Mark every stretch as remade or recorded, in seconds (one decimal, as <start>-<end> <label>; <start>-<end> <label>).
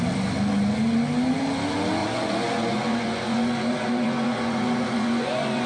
0.0-2.0 recorded; 2.0-5.7 remade